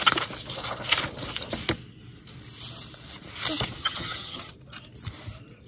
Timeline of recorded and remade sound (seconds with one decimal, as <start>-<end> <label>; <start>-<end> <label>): 0.0-3.8 recorded; 3.8-4.5 remade; 4.5-5.7 recorded